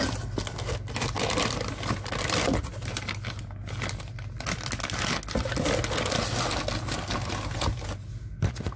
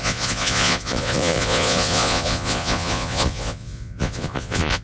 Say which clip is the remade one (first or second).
second